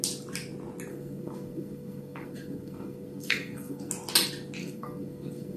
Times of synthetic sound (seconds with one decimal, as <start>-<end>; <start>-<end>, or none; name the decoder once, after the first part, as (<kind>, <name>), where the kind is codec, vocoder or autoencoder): 0.9-3.9 (codec, SNAC); 4.6-5.6